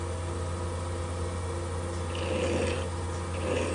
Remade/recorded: recorded